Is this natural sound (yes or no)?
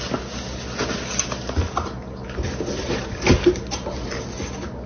yes